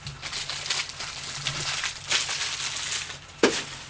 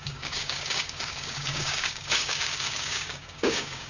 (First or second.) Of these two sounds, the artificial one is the second